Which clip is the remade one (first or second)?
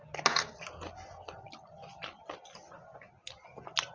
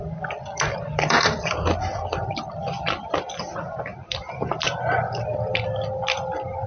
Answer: second